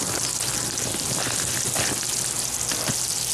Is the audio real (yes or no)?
yes